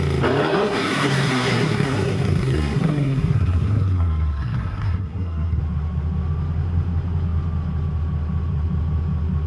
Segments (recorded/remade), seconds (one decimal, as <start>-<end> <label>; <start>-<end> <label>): 0.0-0.4 recorded; 0.4-5.6 remade; 5.6-9.5 recorded